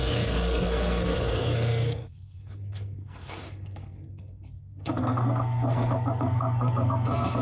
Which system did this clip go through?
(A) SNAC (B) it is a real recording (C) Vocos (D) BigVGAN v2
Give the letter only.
A